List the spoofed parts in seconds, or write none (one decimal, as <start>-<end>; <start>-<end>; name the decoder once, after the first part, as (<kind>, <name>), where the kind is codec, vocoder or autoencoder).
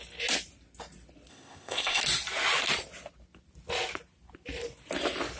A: 1.3-2.0 (codec, ZipCodec)